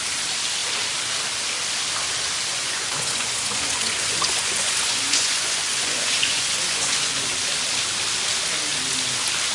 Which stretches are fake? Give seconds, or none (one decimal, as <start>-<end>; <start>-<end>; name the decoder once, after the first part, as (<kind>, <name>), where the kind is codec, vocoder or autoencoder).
2.5-7.3 (vocoder, Vocos)